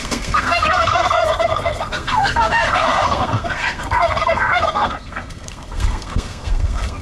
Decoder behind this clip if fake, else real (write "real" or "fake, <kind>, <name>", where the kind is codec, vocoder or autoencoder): fake, codec, SNAC